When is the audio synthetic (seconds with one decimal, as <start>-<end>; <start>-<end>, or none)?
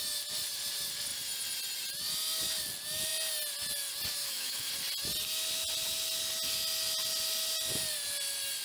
4.2-4.7